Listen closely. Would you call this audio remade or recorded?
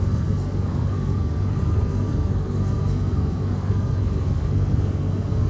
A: remade